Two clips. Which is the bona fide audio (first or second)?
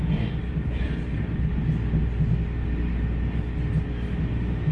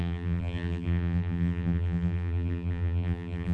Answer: first